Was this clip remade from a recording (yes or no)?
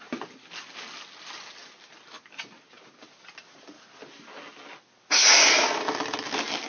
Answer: no